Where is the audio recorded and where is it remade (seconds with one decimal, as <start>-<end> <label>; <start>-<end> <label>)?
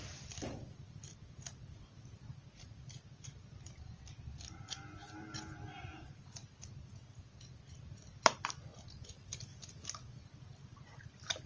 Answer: 0.0-5.9 remade; 5.9-7.8 recorded; 7.8-8.7 remade; 8.7-10.6 recorded; 10.6-11.5 remade